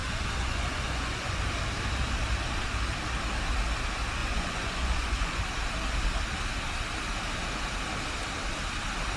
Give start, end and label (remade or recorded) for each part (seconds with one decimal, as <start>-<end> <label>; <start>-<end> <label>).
0.0-1.4 remade; 1.4-4.2 recorded; 4.2-5.4 remade; 5.4-9.2 recorded